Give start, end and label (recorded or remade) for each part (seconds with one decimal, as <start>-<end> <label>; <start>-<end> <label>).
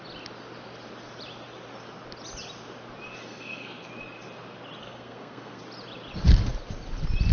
0.0-3.3 recorded; 3.3-3.9 remade; 3.9-4.8 recorded; 4.8-5.6 remade; 5.6-7.3 recorded